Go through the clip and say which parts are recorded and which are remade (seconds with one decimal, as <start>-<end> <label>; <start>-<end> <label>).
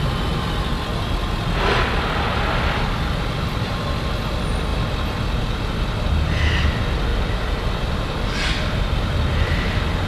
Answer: 0.0-7.1 recorded; 7.1-7.6 remade; 7.6-10.1 recorded